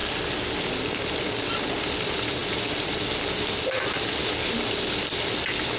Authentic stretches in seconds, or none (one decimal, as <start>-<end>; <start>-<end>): 0.0-5.8